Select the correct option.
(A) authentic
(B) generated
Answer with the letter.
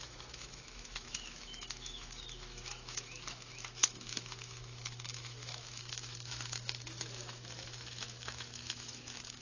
B